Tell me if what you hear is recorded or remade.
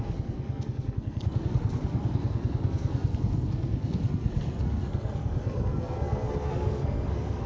remade